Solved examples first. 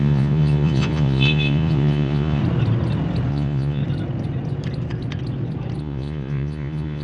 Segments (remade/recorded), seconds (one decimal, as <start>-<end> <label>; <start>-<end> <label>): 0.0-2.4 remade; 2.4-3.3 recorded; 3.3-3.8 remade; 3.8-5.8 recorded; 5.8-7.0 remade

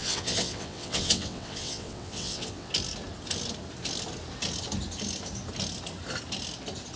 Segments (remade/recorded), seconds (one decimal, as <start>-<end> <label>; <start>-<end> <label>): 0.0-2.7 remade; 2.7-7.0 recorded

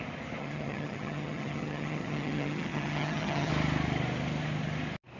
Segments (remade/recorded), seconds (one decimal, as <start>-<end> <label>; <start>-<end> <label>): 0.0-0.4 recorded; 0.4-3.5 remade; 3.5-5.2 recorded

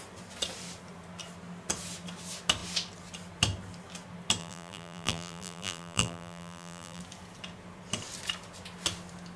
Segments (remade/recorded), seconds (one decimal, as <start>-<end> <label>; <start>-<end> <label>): 0.0-4.4 recorded; 4.4-7.0 remade; 7.0-9.4 recorded

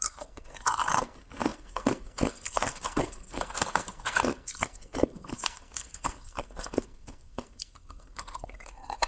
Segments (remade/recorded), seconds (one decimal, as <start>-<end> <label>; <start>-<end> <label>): 0.0-9.1 remade